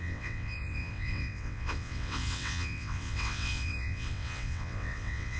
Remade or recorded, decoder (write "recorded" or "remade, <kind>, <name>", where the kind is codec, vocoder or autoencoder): remade, vocoder, WaveNeXt